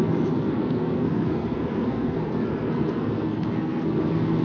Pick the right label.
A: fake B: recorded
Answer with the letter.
A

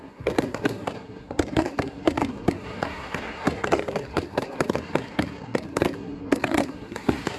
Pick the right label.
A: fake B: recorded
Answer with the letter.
A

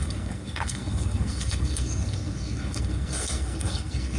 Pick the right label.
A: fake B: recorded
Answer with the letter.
A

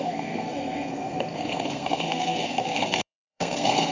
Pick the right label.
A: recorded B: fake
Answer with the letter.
B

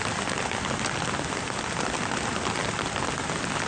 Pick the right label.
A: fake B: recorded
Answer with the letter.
B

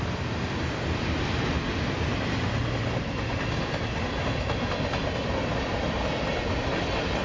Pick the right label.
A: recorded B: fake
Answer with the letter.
A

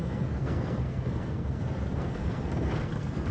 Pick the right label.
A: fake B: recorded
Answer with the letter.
A